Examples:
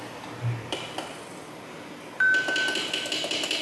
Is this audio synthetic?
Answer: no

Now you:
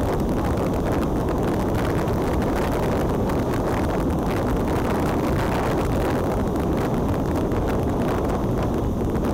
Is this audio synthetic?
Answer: no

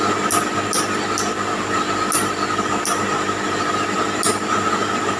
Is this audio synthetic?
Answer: no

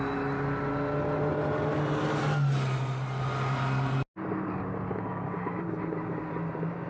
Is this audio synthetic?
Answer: no